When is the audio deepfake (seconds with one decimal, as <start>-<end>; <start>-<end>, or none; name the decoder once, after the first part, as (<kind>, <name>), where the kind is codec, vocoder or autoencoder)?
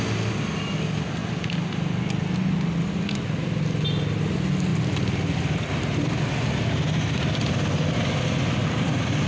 4.7-6.2 (vocoder, BigVGAN v2)